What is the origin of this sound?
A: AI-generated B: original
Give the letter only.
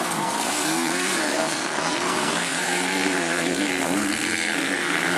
A